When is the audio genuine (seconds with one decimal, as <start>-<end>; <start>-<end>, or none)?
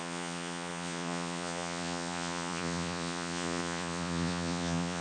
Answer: none